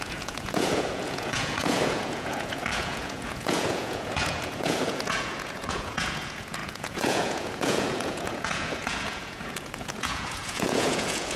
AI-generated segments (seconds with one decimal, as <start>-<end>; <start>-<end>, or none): 0.0-11.4